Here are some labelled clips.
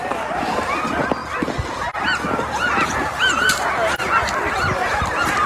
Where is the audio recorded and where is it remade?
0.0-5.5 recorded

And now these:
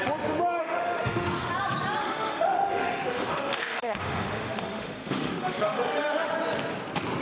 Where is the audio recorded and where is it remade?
0.0-0.6 recorded; 0.6-1.5 remade; 1.5-2.0 recorded; 2.0-6.3 remade; 6.3-7.2 recorded

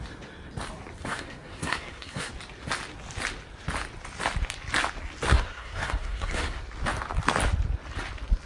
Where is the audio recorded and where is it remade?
0.0-1.0 recorded; 1.0-2.3 remade; 2.3-5.3 recorded; 5.3-6.6 remade; 6.6-8.5 recorded

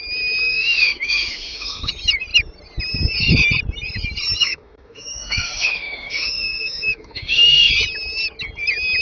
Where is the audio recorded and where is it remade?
0.0-0.4 recorded; 0.4-1.9 remade; 1.9-4.4 recorded; 4.4-7.7 remade; 7.7-9.0 recorded

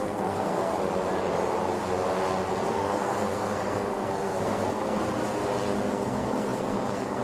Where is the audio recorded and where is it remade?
0.0-0.7 remade; 0.7-2.7 recorded; 2.7-5.2 remade; 5.2-5.9 recorded; 5.9-7.2 remade

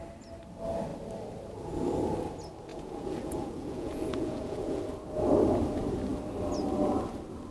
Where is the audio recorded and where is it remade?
0.0-2.7 recorded; 2.7-4.8 remade; 4.8-7.5 recorded

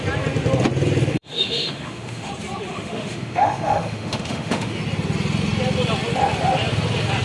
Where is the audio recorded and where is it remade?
0.0-1.1 recorded; 1.1-2.3 remade; 2.3-2.7 recorded; 2.7-4.8 remade; 4.8-7.2 recorded

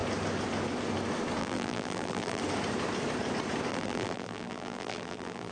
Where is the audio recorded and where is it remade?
0.0-1.4 recorded; 1.4-2.4 remade; 2.4-3.7 recorded; 3.7-5.5 remade